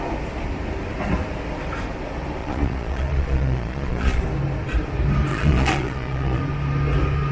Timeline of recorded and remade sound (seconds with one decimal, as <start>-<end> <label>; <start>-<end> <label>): 0.0-2.4 recorded; 2.4-4.2 remade; 4.2-5.3 recorded; 5.3-6.4 remade; 6.4-7.3 recorded